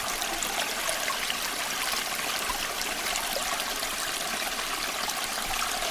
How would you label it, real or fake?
real